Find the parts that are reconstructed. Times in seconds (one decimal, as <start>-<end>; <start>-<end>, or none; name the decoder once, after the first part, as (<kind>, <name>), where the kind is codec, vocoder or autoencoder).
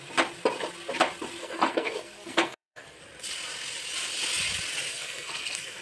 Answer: 1.4-3.0 (codec, SNAC); 4.9-5.8